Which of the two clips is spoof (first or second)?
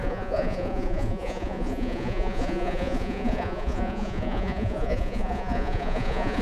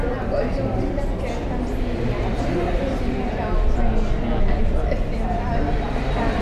first